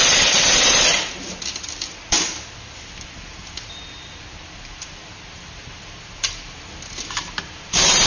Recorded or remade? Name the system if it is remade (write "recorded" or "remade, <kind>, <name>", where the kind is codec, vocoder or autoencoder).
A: remade, vocoder, BigVGAN v2